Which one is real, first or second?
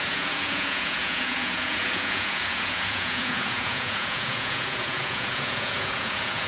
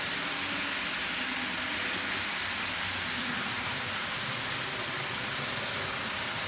second